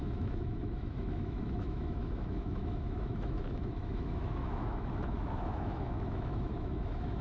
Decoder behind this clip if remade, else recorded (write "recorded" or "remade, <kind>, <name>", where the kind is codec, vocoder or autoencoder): remade, autoencoder, DAC-VAE